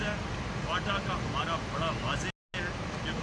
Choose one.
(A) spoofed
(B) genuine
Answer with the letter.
B